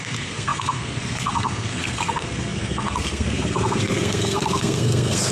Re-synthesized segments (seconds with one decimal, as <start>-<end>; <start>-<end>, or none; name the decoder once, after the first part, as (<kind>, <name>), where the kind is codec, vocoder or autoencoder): 0.0-5.3 (codec, SNAC)